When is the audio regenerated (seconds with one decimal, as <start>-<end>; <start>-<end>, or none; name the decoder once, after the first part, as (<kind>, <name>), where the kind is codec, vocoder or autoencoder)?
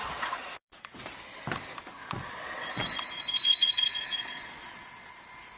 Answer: 0.0-1.0 (vocoder, Vocos); 2.0-5.1